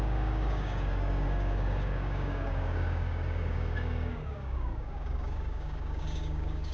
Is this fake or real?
fake